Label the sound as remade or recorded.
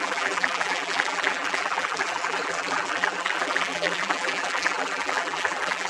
remade